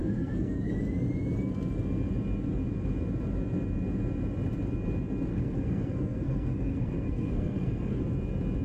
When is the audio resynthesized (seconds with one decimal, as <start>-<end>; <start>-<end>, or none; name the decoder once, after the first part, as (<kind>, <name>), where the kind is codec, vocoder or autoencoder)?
0.0-0.7 (codec, SNAC); 5.3-8.0